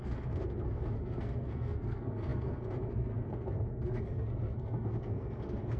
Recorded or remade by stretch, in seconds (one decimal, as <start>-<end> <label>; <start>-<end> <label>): 0.0-5.8 remade